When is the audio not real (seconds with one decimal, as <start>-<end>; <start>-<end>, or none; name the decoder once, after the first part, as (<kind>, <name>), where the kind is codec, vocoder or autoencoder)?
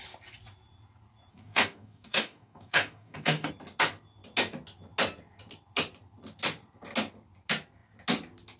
1.3-3.5 (codec, DAC)